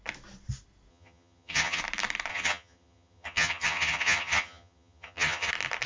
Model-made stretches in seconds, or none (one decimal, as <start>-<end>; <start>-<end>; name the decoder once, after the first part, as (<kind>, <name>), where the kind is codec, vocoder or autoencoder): 0.9-1.8 (vocoder, HiFi-GAN); 2.3-5.5